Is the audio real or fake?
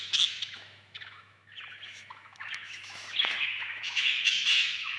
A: fake